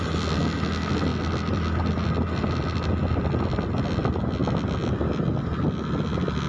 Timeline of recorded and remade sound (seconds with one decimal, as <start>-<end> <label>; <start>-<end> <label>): 0.0-6.5 recorded